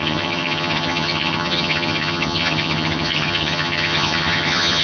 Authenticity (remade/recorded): remade